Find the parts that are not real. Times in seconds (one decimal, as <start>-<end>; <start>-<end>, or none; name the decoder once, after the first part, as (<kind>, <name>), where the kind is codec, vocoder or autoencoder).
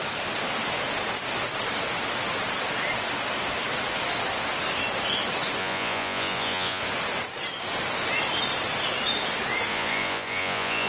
5.6-6.8 (vocoder, Vocos); 9.7-10.9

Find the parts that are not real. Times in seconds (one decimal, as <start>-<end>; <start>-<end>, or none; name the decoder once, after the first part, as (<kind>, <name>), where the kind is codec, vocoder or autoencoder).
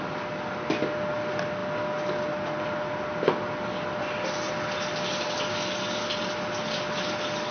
none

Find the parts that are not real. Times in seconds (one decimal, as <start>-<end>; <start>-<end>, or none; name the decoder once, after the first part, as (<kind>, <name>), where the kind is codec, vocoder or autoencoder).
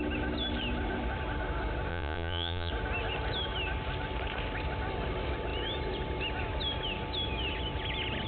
1.9-2.7 (vocoder, Vocos)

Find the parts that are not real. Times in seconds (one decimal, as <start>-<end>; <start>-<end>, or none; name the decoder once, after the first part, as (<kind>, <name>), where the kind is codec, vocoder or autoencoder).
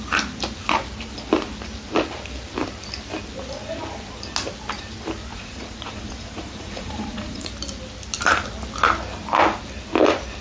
5.3-7.5 (vocoder, Vocos)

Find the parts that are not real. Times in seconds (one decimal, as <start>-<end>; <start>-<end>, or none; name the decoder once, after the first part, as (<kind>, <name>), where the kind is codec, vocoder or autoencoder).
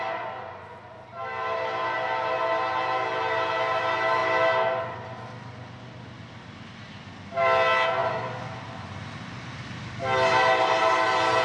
none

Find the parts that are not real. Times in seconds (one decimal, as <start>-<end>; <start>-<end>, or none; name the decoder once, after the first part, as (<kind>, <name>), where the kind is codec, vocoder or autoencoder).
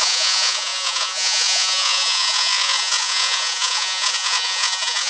0.0-5.1 (vocoder, Vocos)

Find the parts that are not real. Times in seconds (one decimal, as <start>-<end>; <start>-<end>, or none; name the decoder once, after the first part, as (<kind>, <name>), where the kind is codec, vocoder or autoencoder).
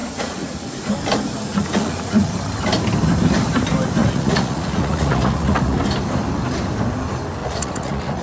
0.0-0.7 (vocoder, Vocos); 1.5-2.3; 4.0-5.8; 7.4-8.2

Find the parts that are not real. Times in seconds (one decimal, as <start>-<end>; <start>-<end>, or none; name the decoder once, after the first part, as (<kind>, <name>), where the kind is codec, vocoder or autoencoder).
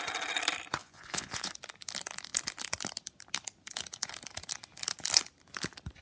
0.8-1.5 (vocoder, Vocos)